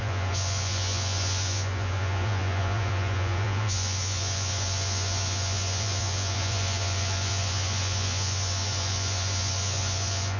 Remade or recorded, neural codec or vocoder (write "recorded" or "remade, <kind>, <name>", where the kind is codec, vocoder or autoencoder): remade, vocoder, Vocos